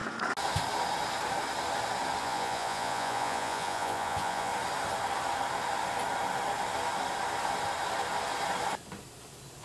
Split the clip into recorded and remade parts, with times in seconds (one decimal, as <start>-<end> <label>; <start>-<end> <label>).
0.0-2.2 recorded; 2.2-4.5 remade; 4.5-9.6 recorded